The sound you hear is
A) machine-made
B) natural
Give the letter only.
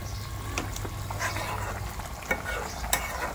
B